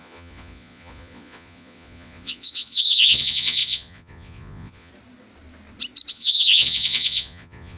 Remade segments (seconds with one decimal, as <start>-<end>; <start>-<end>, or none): 0.0-4.9; 6.1-7.8